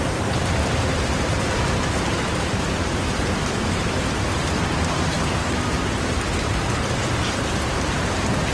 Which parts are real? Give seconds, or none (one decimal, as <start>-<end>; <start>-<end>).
5.4-7.5